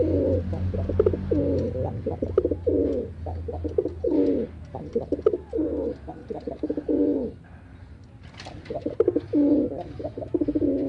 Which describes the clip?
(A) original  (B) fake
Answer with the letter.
A